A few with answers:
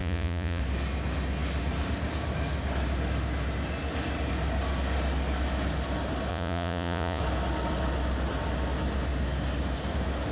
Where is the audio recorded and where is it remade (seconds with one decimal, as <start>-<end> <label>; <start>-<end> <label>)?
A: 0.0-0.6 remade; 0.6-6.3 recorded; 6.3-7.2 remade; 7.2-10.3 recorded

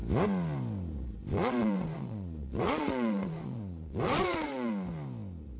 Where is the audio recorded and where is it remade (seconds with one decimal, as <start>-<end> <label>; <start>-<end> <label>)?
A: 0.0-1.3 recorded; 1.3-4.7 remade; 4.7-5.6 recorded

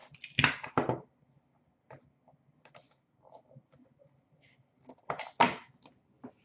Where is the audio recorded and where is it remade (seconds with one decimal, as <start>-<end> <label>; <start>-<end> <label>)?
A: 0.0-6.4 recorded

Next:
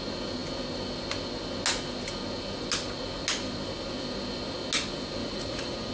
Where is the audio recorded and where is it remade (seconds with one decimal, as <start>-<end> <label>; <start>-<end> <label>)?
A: 0.0-5.2 recorded; 5.2-5.9 remade